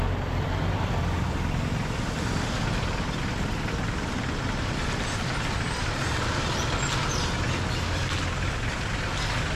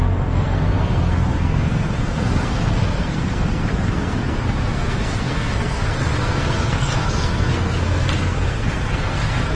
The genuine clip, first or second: first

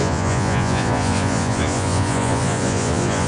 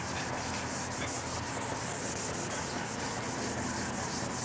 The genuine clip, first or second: second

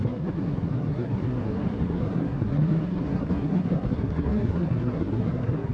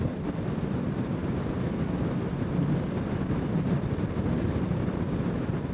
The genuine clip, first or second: second